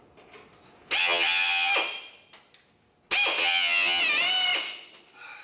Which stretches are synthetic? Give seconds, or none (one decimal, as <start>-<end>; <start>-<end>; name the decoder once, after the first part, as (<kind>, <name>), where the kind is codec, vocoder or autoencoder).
1.0-1.7 (vocoder, HiFi-GAN); 3.4-4.0